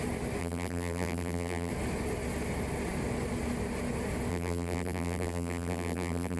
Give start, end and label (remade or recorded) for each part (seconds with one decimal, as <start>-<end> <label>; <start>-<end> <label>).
0.0-0.4 recorded; 0.4-1.7 remade; 1.7-4.3 recorded; 4.3-6.4 remade